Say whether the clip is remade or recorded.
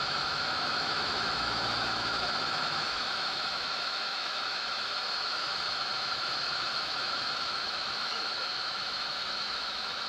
remade